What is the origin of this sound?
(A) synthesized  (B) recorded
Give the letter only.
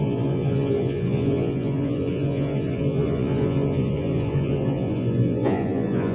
A